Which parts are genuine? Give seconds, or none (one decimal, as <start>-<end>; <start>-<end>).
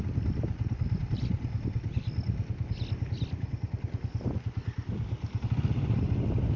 0.0-6.6